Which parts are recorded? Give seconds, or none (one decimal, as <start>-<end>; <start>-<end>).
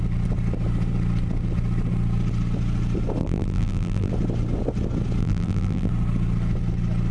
0.0-3.2; 4.1-5.2; 5.9-7.1